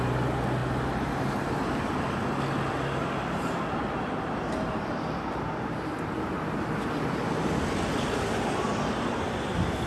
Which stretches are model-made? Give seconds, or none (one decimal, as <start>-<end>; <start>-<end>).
none